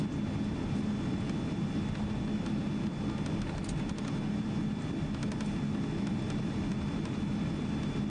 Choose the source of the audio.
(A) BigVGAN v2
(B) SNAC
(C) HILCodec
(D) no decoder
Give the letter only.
D